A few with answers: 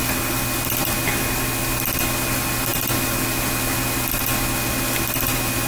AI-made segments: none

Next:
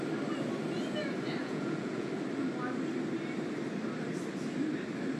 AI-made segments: 1.4-2.1 (vocoder, Vocos)

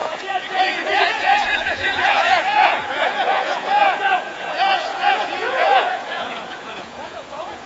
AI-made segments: 0.0-7.7 (vocoder, Vocos)

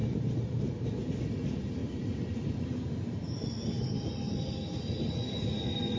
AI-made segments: 0.0-0.6 (vocoder, BigVGAN v2); 1.8-4.4

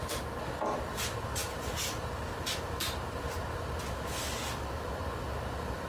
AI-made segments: none

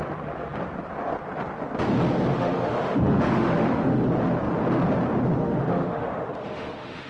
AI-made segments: 2.3-4.0 (autoencoder, DAC-VAE); 5.4-7.1